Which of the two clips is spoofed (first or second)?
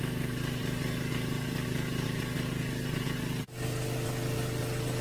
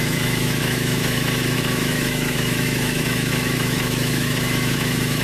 second